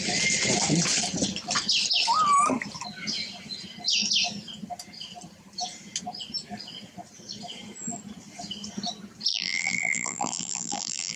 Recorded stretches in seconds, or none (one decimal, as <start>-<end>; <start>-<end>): 0.0-9.3